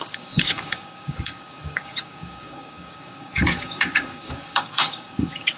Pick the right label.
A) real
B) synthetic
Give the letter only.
B